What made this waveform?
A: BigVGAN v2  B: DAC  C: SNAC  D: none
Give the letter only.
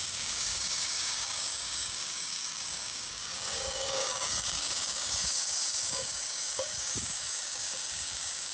B